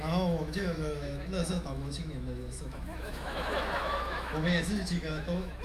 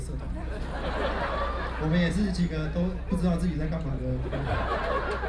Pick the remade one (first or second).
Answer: first